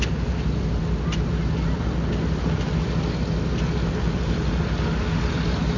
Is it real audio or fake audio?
real